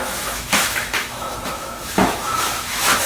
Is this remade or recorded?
remade